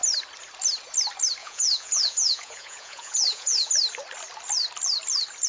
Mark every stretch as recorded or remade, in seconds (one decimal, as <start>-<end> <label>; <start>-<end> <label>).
0.0-1.4 recorded; 1.4-3.7 remade; 3.7-5.5 recorded

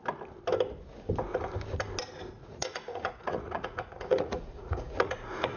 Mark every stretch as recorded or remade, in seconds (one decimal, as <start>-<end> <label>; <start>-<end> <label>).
0.0-2.4 recorded; 2.4-5.6 remade